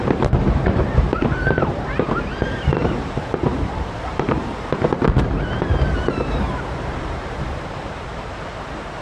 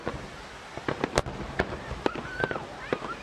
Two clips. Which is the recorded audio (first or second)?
second